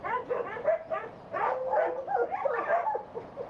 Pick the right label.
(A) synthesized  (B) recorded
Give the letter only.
B